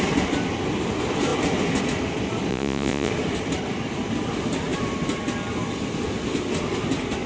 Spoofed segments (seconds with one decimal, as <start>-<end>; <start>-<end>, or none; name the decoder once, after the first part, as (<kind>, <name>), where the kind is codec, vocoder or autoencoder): 2.5-3.1 (vocoder, Vocos)